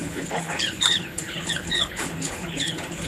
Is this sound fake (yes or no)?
yes